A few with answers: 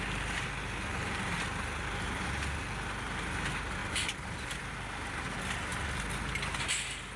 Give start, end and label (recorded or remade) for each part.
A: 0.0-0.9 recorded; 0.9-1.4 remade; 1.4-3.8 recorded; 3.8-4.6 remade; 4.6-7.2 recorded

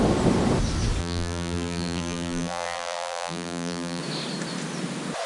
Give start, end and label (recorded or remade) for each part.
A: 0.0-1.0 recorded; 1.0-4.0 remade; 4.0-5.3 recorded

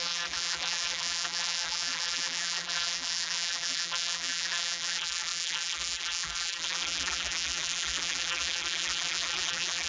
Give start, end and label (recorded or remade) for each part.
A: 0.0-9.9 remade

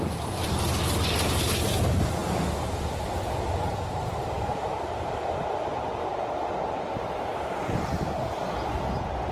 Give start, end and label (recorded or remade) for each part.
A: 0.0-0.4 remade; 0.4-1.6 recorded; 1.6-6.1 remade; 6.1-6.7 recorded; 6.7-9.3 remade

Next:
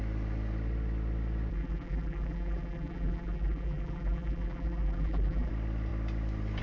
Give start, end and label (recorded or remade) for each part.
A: 0.0-1.5 recorded; 1.5-5.5 remade; 5.5-6.6 recorded

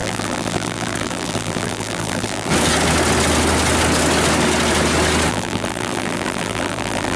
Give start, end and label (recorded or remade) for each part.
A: 0.0-2.5 remade; 2.5-5.3 recorded; 5.3-7.2 remade

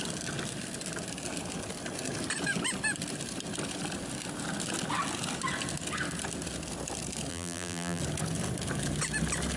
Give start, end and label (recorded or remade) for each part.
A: 0.0-7.3 recorded; 7.3-8.0 remade; 8.0-9.6 recorded

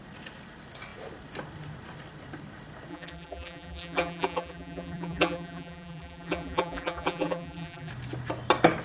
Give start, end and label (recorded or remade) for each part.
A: 0.0-2.9 recorded; 2.9-7.9 remade; 7.9-8.8 recorded